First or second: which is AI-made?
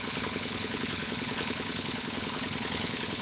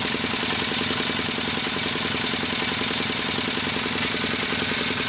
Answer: first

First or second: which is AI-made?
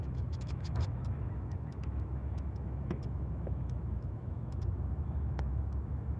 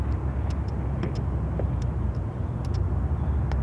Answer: first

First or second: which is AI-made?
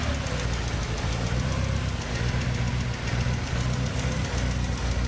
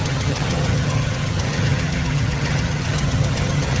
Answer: second